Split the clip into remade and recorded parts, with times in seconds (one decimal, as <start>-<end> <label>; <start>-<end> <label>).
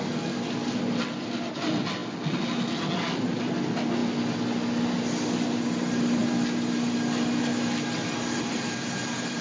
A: 0.0-9.4 recorded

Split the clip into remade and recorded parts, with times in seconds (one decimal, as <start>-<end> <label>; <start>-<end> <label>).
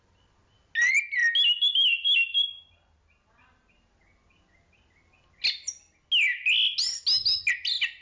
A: 0.0-8.0 recorded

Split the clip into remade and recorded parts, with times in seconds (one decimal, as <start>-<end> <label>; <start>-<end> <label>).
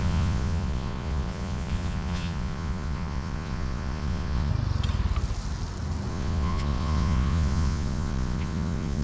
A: 0.0-4.5 remade; 4.5-6.1 recorded; 6.1-9.0 remade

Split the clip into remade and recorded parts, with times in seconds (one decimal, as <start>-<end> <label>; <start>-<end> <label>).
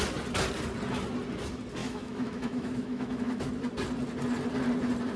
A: 0.0-1.8 recorded; 1.8-3.4 remade; 3.4-5.2 recorded